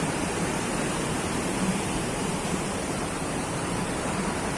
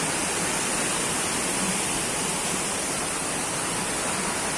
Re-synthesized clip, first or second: first